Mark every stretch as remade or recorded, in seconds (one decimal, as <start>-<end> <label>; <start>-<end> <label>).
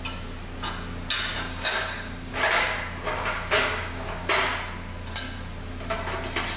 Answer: 0.0-1.3 recorded; 1.3-4.3 remade; 4.3-6.6 recorded